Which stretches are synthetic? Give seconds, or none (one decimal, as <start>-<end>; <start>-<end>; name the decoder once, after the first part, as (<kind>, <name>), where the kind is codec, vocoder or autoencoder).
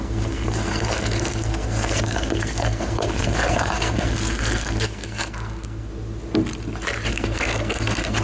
0.0-5.9 (codec, SNAC); 7.1-8.2